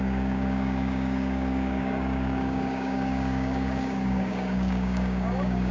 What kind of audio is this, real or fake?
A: fake